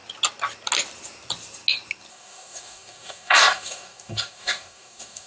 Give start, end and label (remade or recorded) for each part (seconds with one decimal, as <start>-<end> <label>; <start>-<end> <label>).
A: 0.0-2.1 recorded; 2.1-5.3 remade